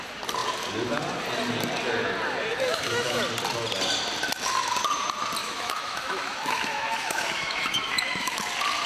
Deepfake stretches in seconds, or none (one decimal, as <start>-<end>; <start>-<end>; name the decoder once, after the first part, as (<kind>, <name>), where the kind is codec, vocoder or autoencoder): 2.5-3.2 (autoencoder, DAC-VAE); 5.4-8.4